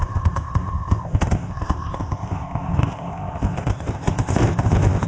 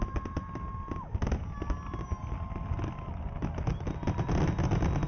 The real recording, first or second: second